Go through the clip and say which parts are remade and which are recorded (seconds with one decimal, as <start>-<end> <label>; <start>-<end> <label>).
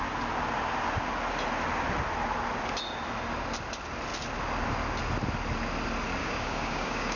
0.0-6.2 recorded; 6.2-7.2 remade